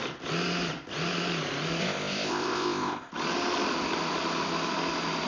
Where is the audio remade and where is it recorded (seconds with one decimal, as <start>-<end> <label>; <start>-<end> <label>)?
0.0-1.8 recorded; 1.8-3.1 remade; 3.1-5.3 recorded